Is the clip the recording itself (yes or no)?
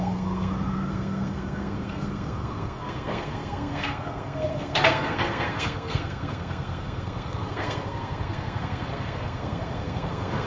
no